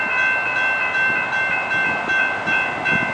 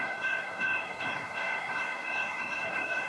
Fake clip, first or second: second